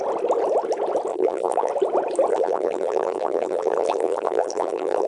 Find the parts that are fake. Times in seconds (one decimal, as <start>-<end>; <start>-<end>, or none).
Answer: 1.1-1.7; 2.3-5.1